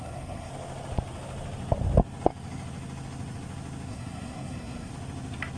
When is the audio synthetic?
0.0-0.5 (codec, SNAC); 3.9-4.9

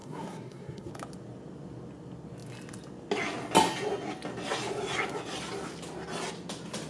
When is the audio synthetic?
0.0-0.9 (codec, SNAC)

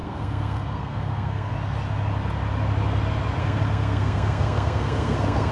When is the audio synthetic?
0.0-1.5 (codec, SNAC); 3.4-5.5

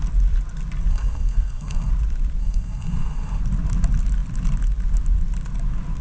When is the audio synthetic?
0.9-1.9 (codec, SNAC); 2.4-3.4

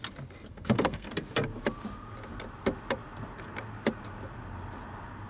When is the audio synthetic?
0.5-1.1 (codec, SNAC)